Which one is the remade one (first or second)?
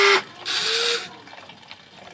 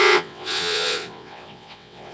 second